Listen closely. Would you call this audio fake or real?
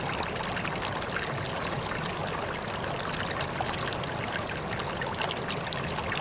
real